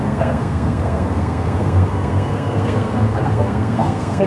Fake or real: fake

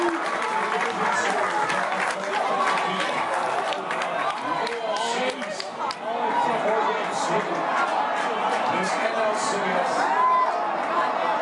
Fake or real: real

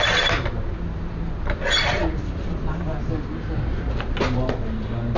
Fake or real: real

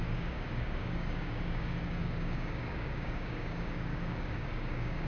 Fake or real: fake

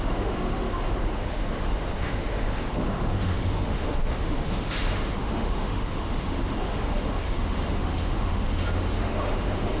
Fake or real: fake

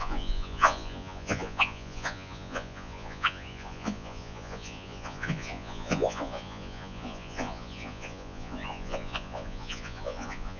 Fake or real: fake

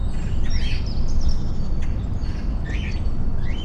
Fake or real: real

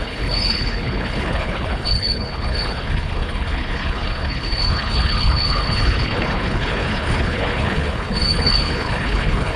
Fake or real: fake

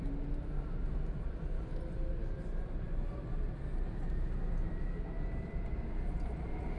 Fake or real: real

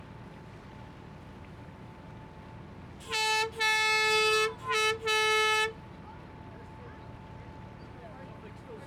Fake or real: real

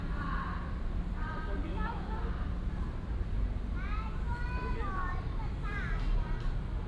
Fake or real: real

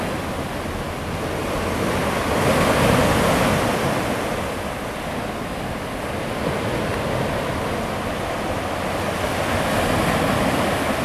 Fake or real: real